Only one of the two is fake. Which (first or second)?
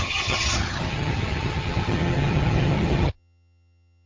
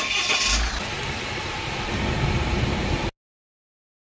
first